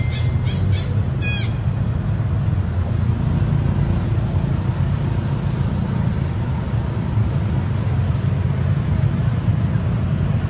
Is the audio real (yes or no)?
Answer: yes